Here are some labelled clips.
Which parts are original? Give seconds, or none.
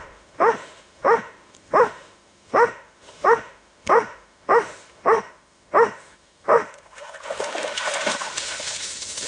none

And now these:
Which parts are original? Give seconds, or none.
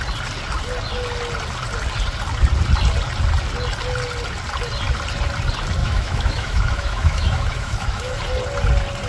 0.0-5.8; 8.2-9.1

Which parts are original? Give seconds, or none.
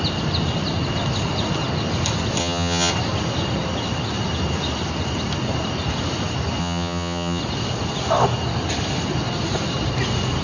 0.0-2.4; 2.9-6.6; 7.4-10.4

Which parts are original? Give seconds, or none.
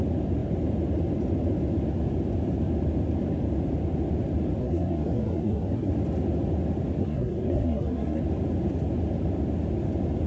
0.0-4.6; 5.9-7.0; 8.2-10.3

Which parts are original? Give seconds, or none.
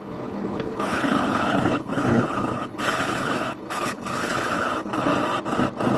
5.1-6.0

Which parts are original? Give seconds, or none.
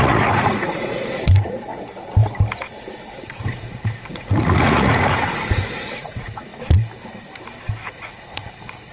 1.7-3.2; 6.5-7.8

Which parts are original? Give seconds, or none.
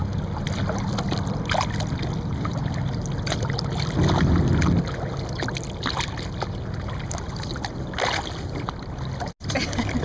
0.0-10.0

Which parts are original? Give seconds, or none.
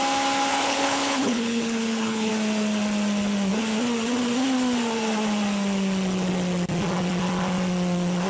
0.0-0.5; 2.3-8.3